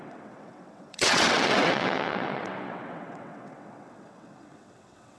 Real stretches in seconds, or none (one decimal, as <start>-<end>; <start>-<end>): none